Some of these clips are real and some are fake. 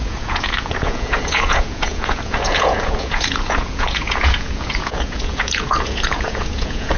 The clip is fake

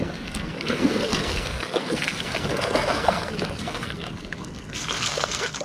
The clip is fake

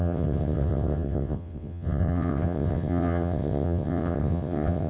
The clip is fake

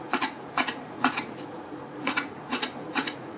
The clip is fake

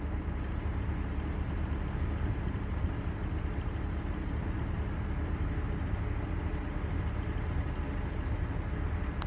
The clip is real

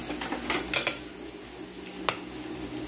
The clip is real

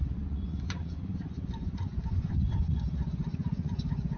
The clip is fake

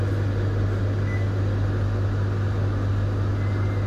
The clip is real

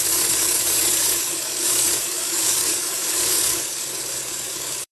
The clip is fake